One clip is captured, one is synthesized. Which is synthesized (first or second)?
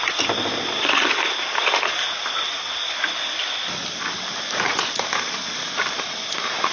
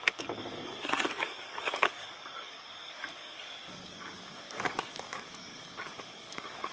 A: second